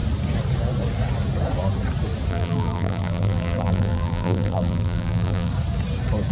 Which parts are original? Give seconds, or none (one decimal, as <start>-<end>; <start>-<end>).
0.0-2.3; 5.5-6.3